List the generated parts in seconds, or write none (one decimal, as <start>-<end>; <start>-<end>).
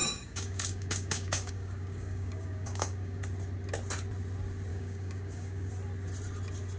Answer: 0.0-3.2; 4.7-5.7